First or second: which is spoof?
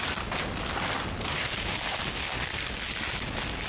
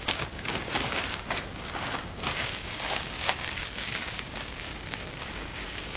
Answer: second